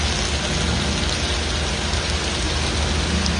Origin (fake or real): real